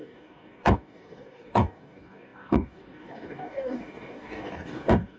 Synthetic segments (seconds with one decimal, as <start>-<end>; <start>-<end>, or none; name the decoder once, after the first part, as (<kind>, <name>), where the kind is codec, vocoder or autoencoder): 0.0-5.2 (codec, DAC)